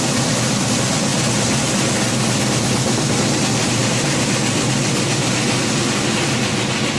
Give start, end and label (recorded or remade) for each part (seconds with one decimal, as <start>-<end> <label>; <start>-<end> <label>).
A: 0.0-3.6 recorded; 3.6-4.2 remade; 4.2-7.0 recorded